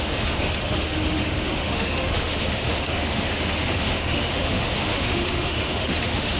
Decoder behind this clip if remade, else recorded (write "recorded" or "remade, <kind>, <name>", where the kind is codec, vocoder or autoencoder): remade, autoencoder, DAC-VAE